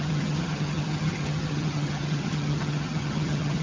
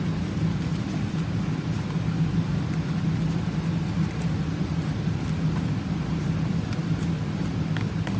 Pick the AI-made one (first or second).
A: first